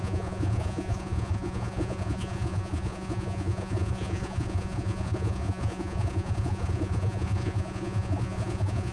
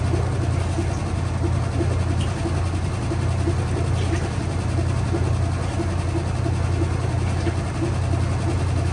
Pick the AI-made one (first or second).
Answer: first